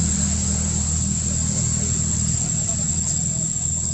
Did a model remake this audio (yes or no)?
no